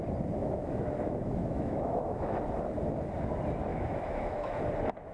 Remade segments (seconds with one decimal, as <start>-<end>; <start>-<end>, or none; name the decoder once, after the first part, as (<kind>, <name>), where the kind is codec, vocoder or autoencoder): 0.4-2.4 (autoencoder, DAC-VAE); 3.7-4.6